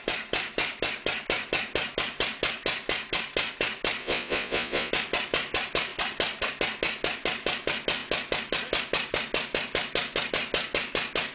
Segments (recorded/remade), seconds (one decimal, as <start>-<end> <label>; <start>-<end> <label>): 0.0-4.0 recorded; 4.0-4.9 remade; 4.9-11.3 recorded